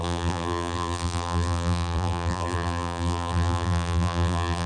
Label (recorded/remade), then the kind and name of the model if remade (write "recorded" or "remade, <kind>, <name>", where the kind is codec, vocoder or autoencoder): remade, vocoder, BigVGAN v2